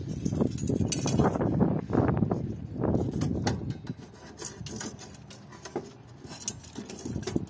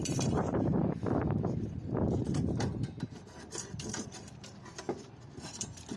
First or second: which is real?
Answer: first